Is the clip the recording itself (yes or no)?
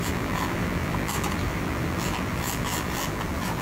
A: no